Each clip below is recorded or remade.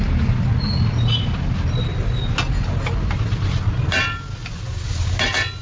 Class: recorded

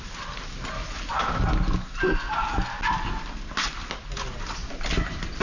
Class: recorded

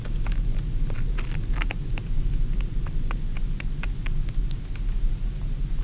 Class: recorded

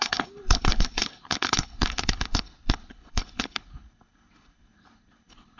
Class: remade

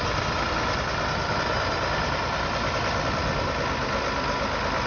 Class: recorded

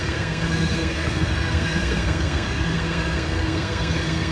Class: remade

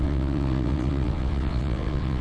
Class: remade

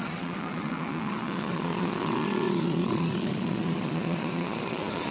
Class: remade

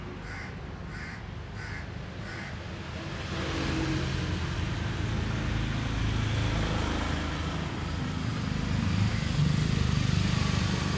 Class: recorded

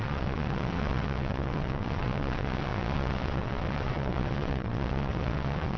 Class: remade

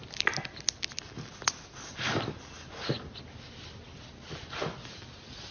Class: recorded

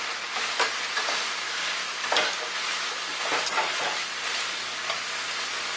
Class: recorded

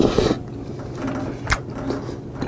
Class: recorded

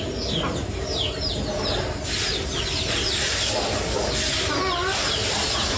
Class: recorded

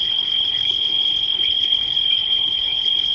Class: remade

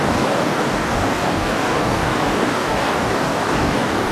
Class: remade